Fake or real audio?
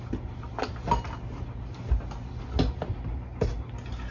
real